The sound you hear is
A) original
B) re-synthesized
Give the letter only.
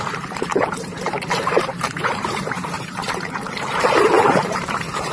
B